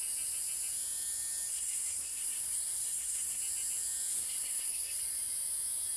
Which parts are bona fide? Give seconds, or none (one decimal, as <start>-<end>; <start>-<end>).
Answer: 0.0-1.5; 3.4-4.1; 5.0-6.0